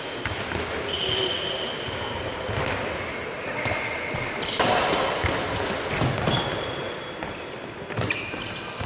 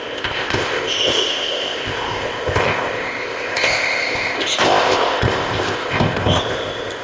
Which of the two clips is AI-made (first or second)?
second